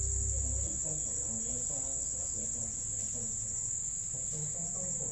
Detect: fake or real real